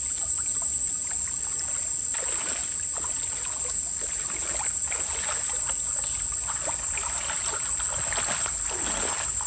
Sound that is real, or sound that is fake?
real